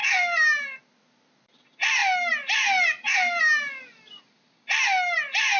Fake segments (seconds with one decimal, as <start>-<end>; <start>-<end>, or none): none